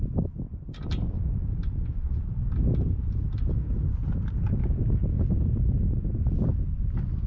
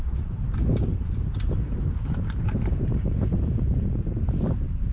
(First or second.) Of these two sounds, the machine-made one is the second